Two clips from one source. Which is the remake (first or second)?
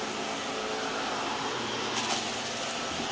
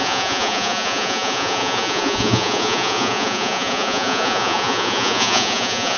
second